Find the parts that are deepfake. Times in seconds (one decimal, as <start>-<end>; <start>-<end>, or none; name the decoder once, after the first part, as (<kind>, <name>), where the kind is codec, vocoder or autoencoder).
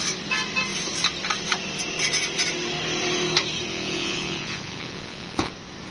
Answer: 3.7-5.5 (vocoder, Vocos)